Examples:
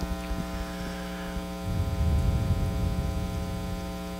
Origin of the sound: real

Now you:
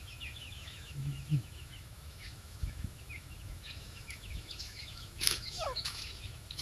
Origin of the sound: fake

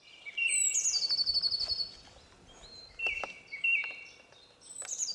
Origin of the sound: real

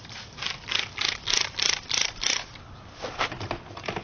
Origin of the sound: real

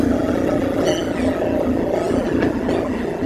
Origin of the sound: real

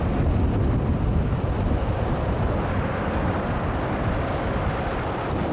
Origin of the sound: real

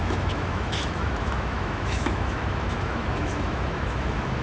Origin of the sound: fake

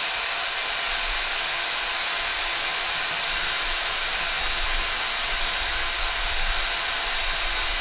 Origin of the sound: real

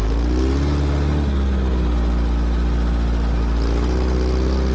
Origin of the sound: real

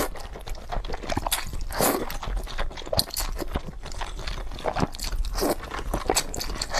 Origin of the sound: real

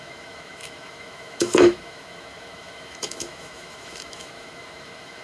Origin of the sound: fake